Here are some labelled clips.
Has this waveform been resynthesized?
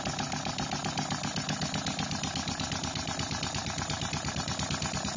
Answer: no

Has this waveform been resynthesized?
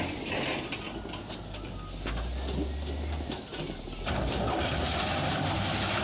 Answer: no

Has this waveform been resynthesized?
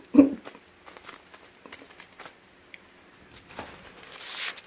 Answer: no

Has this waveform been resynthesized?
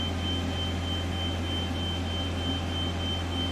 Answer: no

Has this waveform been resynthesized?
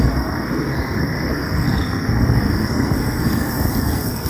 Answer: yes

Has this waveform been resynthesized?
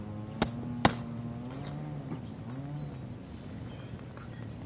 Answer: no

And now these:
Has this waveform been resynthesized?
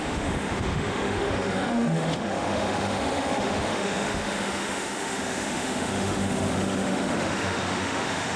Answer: yes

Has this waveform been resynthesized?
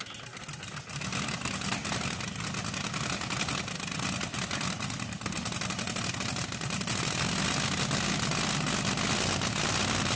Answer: no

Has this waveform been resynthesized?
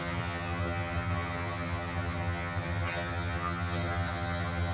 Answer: yes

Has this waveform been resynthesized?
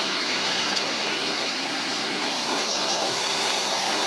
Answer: yes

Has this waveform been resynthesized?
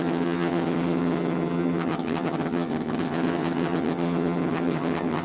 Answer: yes